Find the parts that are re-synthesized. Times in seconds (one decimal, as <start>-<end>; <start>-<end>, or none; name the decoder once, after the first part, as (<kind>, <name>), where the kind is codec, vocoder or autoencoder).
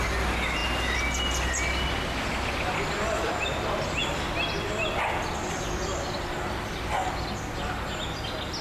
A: none